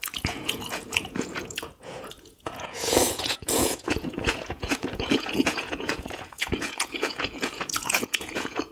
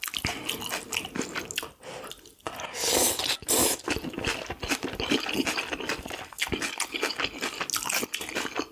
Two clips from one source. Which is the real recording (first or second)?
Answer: second